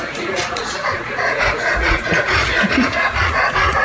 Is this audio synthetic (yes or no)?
yes